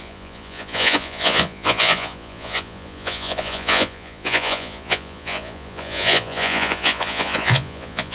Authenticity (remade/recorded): remade